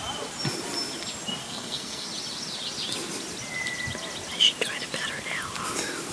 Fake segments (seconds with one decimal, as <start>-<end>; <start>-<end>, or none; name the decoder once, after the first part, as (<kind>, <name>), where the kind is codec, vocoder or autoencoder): 1.4-2.1 (codec, SNAC)